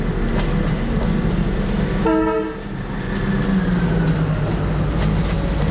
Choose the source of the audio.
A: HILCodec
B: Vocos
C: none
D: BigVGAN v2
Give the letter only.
C